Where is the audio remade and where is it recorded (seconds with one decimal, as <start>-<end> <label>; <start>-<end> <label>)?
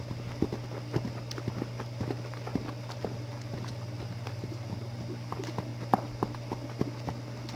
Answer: 0.0-7.6 recorded